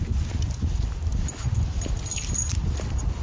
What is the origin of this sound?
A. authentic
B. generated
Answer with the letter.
A